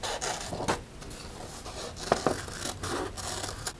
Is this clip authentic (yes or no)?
yes